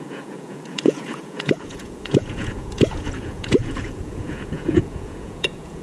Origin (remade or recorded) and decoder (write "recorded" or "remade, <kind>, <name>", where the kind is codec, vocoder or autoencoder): remade, vocoder, Vocos